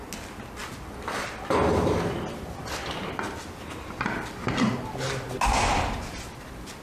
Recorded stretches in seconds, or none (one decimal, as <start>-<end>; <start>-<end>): 0.0-6.8